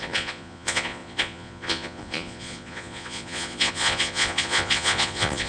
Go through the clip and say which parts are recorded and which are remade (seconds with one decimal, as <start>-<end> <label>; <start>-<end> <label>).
0.0-5.5 remade